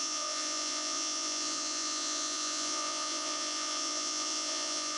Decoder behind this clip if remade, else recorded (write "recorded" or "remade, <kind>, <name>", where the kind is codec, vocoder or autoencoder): remade, vocoder, Vocos